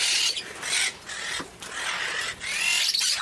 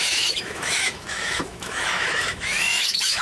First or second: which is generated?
second